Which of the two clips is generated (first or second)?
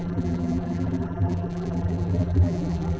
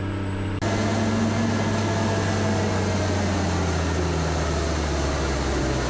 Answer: first